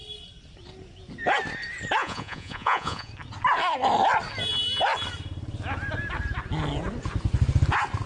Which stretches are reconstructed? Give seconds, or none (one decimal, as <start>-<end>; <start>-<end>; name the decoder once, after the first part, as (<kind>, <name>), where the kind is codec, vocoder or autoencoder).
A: 2.0-3.1 (vocoder, Vocos)